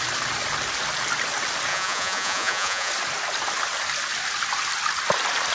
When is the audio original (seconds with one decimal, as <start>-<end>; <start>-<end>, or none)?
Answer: 0.0-1.7; 2.9-5.5